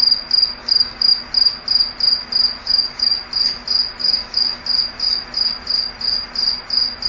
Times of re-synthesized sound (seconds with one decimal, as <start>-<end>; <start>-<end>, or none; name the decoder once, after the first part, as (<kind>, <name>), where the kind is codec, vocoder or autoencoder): 0.6-1.1 (codec, DAC); 2.6-3.2; 4.0-4.6